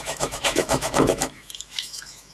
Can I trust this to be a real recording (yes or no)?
no